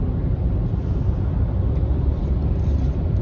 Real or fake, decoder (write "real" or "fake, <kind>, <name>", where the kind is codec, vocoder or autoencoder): real